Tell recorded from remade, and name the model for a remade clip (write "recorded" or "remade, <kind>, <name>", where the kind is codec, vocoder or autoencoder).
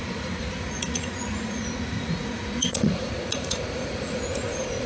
remade, vocoder, Vocos